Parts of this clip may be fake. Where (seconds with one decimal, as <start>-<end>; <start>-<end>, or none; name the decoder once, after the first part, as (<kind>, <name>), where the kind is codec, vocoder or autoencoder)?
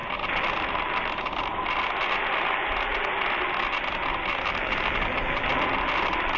none